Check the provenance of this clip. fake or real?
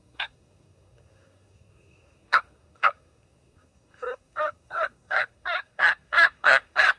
fake